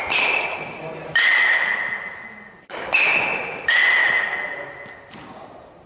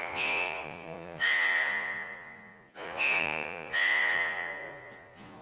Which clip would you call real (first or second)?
first